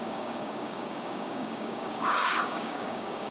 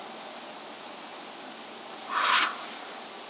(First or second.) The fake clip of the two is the first